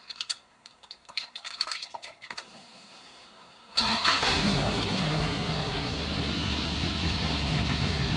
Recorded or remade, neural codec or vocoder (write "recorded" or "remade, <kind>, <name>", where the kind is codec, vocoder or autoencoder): remade, codec, SNAC